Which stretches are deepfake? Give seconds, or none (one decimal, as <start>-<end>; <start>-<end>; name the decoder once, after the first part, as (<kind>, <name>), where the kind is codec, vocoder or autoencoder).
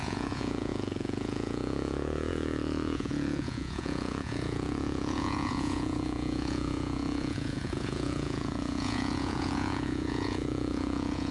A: 0.0-11.3 (vocoder, Vocos)